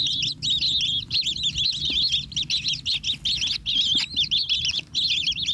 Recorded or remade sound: recorded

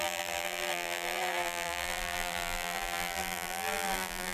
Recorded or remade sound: remade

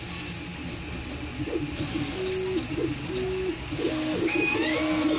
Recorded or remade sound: recorded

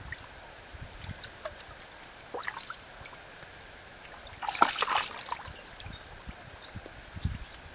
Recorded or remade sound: recorded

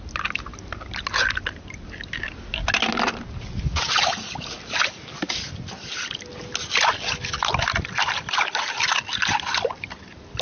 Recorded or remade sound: recorded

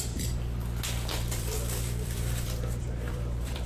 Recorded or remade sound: remade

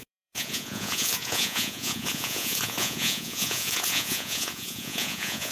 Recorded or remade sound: remade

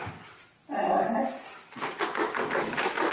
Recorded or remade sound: recorded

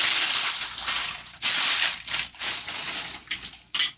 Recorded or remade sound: recorded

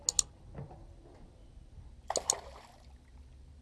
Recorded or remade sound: recorded